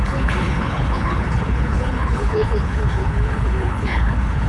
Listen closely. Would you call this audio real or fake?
fake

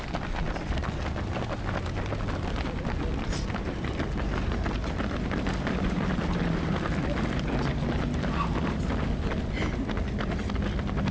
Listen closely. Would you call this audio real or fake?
real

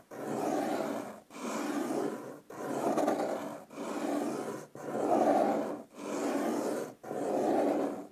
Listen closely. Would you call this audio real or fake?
real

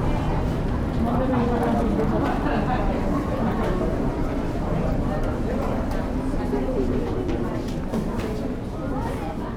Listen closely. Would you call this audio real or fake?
real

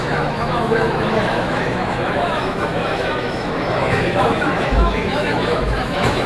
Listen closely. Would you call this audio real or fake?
fake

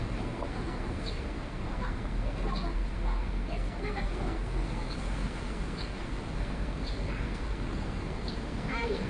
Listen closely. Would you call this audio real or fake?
fake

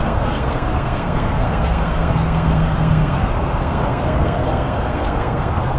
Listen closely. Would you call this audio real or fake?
fake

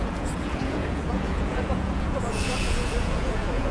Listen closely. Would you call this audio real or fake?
fake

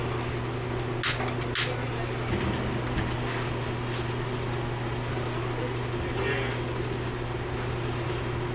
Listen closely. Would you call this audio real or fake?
real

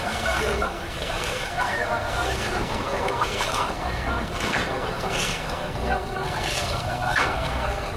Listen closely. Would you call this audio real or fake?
fake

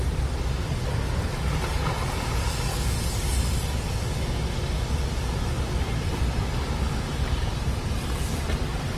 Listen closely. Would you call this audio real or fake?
real